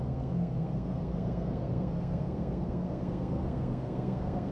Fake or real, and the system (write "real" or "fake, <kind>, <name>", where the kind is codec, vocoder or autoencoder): fake, codec, SNAC